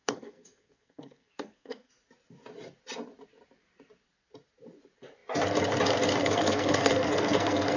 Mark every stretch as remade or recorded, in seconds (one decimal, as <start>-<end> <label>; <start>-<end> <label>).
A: 0.0-1.9 remade; 1.9-6.2 recorded; 6.2-7.8 remade